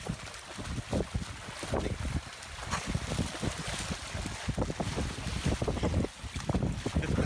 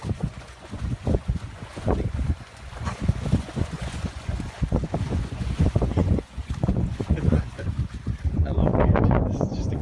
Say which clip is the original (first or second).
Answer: first